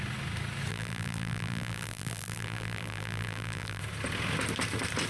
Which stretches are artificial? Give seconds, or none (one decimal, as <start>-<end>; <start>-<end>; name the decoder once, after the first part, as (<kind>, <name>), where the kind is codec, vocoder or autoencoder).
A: 0.7-3.8 (vocoder, BigVGAN v2)